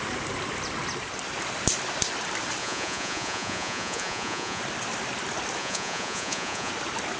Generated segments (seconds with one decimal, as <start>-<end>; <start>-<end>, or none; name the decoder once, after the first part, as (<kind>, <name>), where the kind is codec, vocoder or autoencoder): 2.6-4.6 (vocoder, Vocos); 5.6-6.7